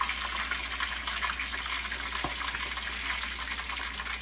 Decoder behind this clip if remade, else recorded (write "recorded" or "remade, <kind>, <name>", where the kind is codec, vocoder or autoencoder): recorded